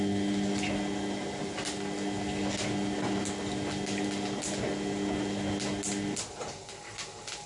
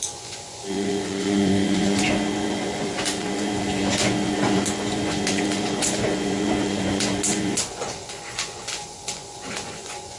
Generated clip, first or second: second